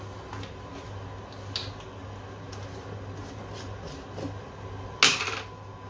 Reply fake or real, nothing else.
real